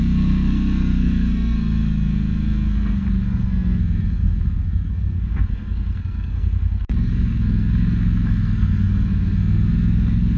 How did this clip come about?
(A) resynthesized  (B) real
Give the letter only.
A